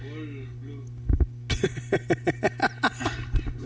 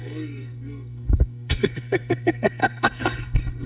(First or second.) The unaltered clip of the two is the first